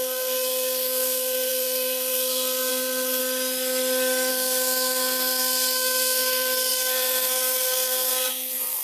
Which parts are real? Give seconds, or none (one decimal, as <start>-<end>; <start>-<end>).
3.2-4.3